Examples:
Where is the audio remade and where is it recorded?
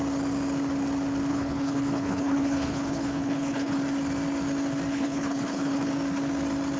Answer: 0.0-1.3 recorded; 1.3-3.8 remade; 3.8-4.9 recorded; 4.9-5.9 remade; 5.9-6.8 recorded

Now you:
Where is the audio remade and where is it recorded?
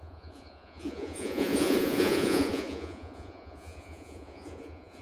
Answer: 0.0-5.0 remade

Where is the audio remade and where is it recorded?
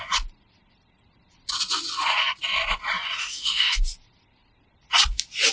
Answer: 0.0-3.2 recorded; 3.2-3.8 remade; 3.8-5.5 recorded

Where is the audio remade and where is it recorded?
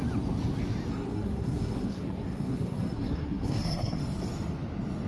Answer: 0.0-0.9 recorded; 0.9-4.0 remade; 4.0-5.1 recorded